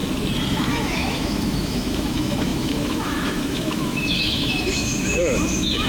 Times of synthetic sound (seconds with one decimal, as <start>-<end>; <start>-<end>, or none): 0.5-5.9